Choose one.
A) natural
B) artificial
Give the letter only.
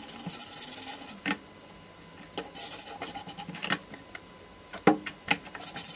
A